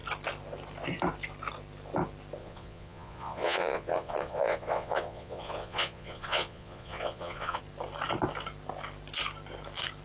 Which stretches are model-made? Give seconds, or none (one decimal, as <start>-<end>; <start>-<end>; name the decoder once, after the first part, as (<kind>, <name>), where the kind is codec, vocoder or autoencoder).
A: 2.4-7.6 (vocoder, Vocos)